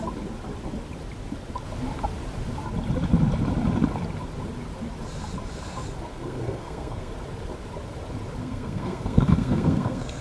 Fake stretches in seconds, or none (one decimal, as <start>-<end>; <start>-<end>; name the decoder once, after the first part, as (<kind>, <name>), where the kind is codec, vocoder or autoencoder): 6.1-7.1 (codec, SNAC); 8.4-10.2